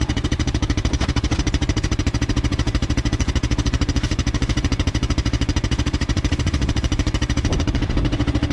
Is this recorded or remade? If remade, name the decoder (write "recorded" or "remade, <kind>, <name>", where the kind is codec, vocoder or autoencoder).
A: remade, vocoder, Vocos